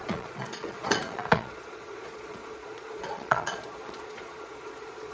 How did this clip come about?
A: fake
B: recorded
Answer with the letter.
A